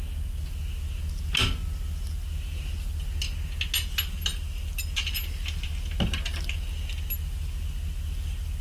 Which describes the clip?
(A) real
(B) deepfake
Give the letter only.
A